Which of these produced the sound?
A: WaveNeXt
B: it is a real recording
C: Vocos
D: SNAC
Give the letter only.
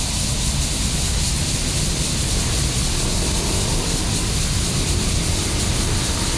B